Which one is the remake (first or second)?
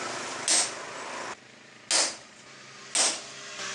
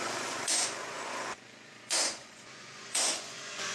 second